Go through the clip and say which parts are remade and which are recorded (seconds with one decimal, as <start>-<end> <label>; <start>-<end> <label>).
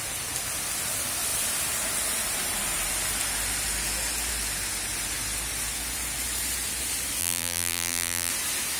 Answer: 0.0-7.2 recorded; 7.2-8.3 remade; 8.3-8.8 recorded